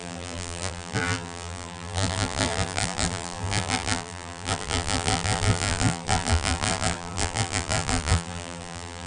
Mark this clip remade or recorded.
remade